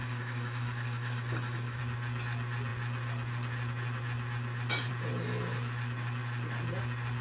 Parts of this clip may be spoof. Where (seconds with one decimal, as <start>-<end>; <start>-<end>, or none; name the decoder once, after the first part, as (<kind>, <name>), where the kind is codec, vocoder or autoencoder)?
0.0-1.8 (codec, DAC)